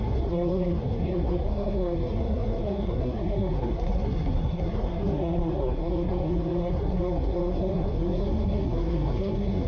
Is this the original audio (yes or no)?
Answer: no